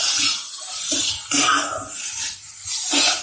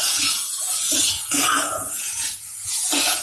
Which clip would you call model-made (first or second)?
second